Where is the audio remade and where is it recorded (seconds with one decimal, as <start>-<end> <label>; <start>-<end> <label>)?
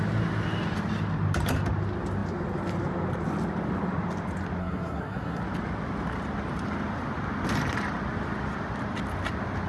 0.0-4.6 recorded; 4.6-5.4 remade; 5.4-9.7 recorded